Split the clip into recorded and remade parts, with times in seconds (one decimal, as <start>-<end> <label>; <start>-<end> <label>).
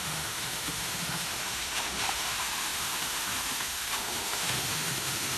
0.0-5.4 remade